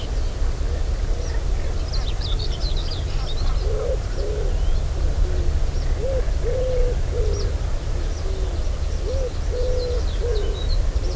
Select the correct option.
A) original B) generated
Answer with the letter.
A